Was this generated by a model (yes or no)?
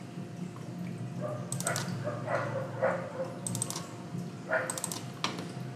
no